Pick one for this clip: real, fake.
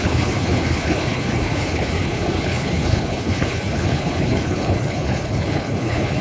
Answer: fake